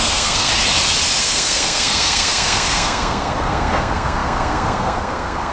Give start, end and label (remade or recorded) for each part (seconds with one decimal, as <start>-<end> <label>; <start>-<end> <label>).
0.0-0.5 remade; 0.5-1.2 recorded; 1.2-5.5 remade